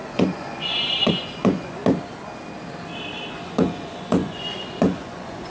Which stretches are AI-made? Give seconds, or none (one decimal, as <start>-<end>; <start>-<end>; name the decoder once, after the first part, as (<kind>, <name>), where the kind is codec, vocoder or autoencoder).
0.0-1.8 (vocoder, Vocos); 3.3-5.5